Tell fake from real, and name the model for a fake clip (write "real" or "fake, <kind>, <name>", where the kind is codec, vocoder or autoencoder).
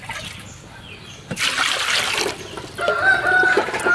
real